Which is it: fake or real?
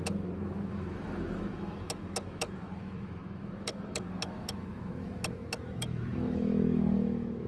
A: fake